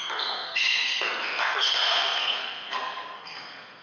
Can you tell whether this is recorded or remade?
remade